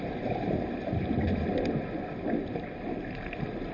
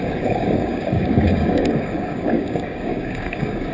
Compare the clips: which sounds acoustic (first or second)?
first